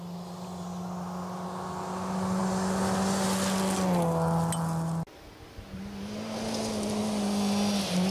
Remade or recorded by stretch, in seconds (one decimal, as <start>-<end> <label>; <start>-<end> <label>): 0.0-8.1 recorded